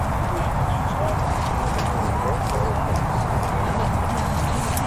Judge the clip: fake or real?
real